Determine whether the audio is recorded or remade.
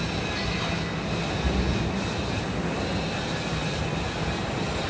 recorded